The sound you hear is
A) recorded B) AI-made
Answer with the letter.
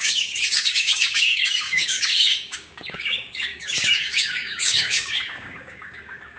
B